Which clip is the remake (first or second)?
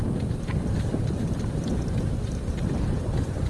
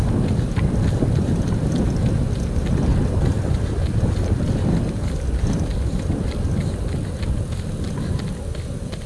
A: first